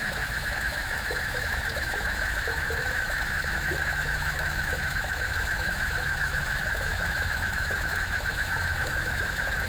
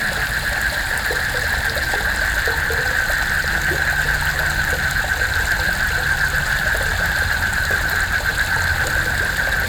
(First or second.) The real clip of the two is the second